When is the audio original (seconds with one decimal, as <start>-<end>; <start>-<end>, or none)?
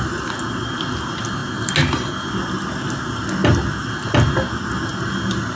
0.0-5.6